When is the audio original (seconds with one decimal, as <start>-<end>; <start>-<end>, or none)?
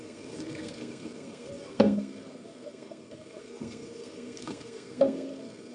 none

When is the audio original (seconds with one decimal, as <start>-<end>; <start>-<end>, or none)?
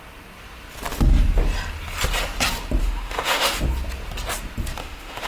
0.0-2.8; 3.6-4.8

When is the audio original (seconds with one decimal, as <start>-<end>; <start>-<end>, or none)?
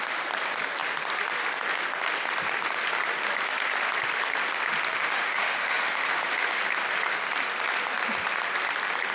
0.0-5.0; 6.6-9.1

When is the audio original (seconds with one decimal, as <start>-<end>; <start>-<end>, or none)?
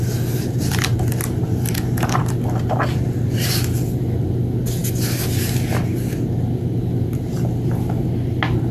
0.0-8.7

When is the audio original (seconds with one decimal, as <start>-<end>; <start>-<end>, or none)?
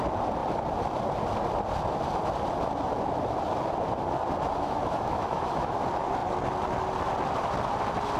0.0-4.5; 5.8-8.2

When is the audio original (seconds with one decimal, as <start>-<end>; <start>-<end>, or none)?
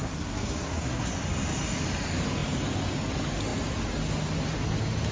1.1-5.1